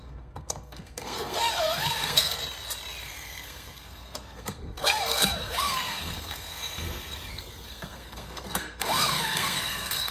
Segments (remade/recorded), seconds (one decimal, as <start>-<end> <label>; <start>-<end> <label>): 0.0-2.4 remade; 2.4-3.0 recorded; 3.0-10.1 remade

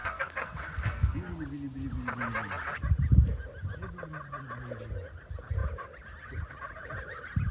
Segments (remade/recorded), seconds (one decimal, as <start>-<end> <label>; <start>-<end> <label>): 0.0-1.3 remade; 1.3-7.5 recorded

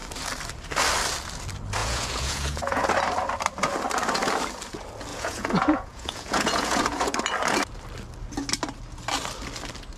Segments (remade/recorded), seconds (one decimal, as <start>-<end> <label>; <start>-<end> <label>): 0.0-1.8 recorded; 1.8-2.8 remade; 2.8-5.1 recorded; 5.1-7.1 remade; 7.1-10.0 recorded

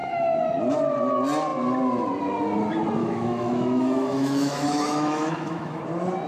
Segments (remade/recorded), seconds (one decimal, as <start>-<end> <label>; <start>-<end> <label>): 0.0-0.6 remade; 0.6-3.0 recorded; 3.0-5.8 remade; 5.8-6.3 recorded